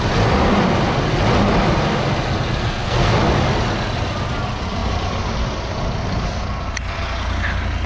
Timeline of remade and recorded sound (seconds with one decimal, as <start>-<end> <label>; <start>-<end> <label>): 0.0-2.6 recorded; 2.6-3.1 remade; 3.1-7.9 recorded